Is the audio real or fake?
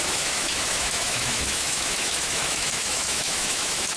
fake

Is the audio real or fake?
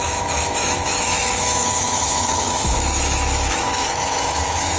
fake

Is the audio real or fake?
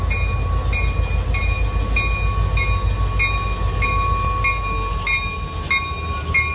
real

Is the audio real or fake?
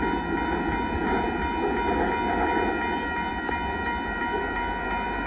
real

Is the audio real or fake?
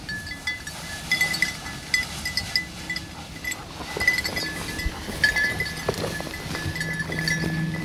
real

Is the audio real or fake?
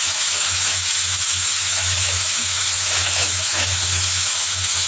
fake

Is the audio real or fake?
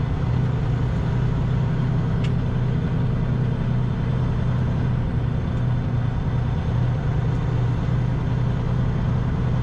real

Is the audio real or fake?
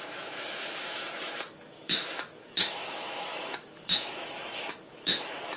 fake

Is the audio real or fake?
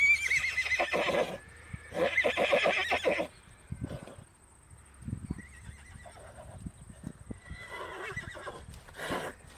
real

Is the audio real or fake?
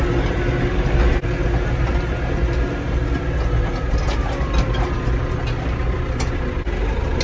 real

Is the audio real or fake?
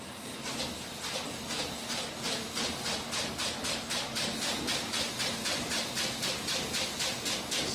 real